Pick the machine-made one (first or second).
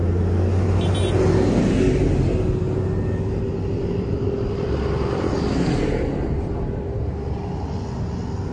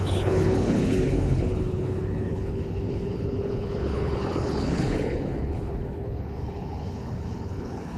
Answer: second